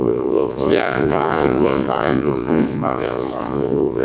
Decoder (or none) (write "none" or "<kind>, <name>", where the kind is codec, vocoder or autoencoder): vocoder, Vocos